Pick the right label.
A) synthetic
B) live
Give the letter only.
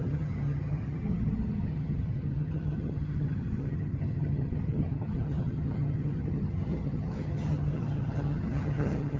A